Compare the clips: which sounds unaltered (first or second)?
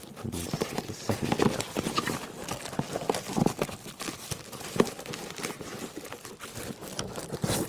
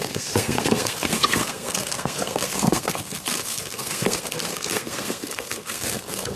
first